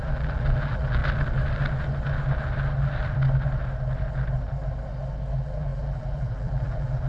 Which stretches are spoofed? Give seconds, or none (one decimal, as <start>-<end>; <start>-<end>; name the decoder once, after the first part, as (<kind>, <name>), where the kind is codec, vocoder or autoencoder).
0.0-1.0 (vocoder, BigVGAN v2); 5.3-7.1